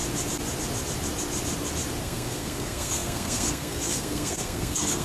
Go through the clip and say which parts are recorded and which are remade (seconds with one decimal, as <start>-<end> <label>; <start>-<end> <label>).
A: 0.0-2.0 recorded; 2.0-5.0 remade